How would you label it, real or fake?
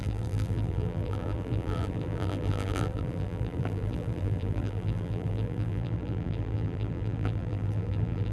fake